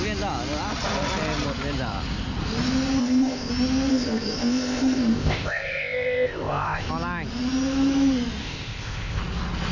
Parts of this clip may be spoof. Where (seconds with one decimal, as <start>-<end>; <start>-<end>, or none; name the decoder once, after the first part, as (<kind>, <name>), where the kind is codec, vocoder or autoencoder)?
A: 3.0-3.5 (codec, ZipCodec); 3.9-6.9; 8.4-9.2